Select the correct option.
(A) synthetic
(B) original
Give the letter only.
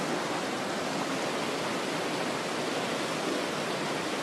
B